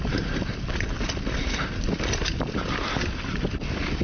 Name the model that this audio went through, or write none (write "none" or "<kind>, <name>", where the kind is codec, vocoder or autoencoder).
none